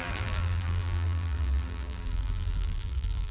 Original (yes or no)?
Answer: no